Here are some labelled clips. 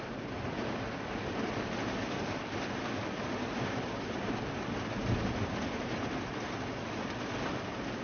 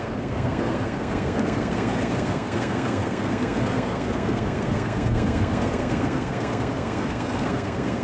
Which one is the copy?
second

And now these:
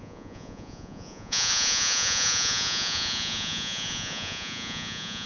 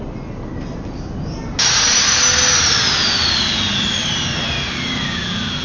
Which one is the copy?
first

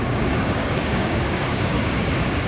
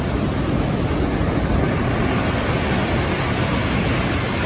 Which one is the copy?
first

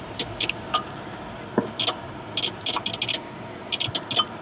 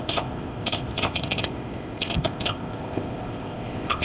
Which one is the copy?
second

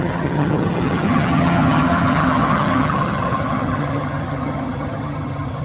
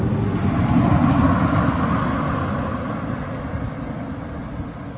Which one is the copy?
first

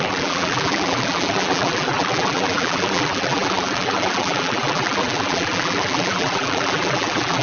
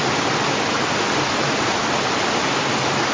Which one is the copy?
first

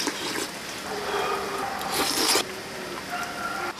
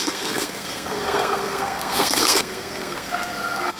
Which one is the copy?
second